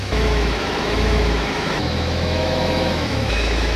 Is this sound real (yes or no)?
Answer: no